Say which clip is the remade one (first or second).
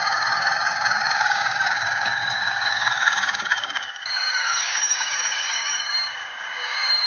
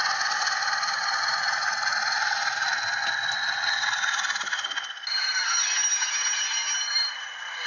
first